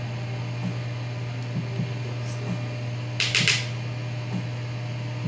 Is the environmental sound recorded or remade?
recorded